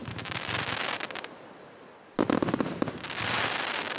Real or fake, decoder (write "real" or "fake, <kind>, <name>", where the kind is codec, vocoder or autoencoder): fake, vocoder, BigVGAN v2